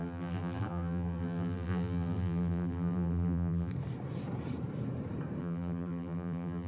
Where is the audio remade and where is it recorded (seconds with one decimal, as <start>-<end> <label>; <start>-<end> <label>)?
0.0-3.7 remade; 3.7-5.4 recorded; 5.4-6.7 remade